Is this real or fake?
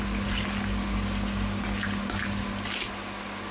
real